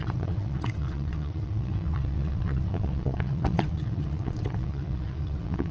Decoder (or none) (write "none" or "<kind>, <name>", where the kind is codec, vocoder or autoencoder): vocoder, WaveNeXt